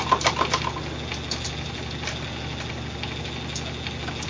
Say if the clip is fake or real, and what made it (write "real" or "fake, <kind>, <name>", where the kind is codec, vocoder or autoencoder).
real